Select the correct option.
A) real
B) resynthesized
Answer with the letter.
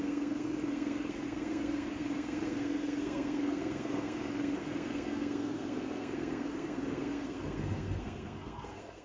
B